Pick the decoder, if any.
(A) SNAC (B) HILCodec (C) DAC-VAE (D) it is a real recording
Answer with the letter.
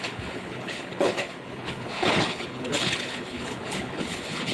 B